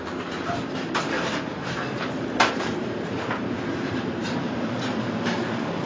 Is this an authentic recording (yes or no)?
no